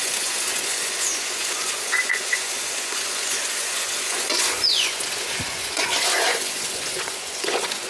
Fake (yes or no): yes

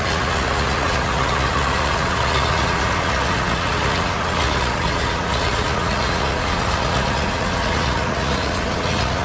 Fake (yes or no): yes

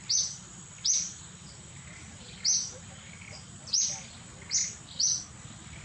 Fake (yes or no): yes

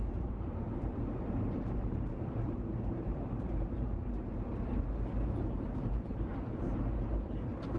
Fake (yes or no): yes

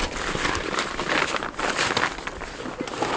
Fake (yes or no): no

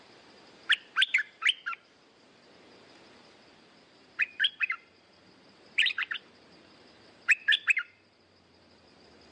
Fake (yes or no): yes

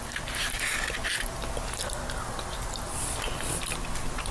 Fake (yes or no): no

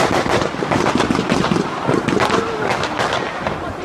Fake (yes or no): no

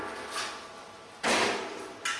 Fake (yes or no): no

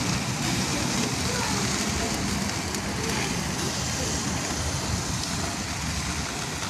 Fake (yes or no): no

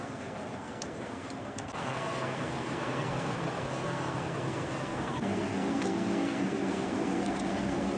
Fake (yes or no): yes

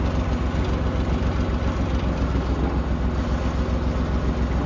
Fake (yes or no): no